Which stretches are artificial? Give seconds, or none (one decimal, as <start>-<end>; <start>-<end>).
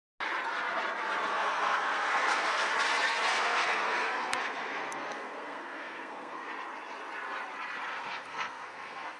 1.3-2.7; 3.3-6.5; 7.9-9.2